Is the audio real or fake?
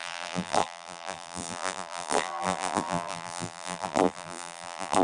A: fake